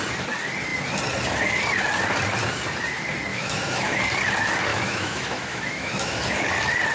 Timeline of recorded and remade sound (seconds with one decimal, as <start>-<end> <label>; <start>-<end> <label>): 0.0-3.3 recorded; 3.3-4.0 remade; 4.0-4.7 recorded; 4.7-6.2 remade; 6.2-6.9 recorded